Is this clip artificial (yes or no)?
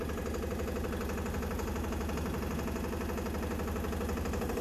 no